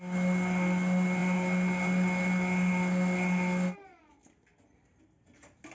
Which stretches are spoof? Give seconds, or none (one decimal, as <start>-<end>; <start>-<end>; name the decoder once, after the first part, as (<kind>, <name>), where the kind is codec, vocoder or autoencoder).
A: none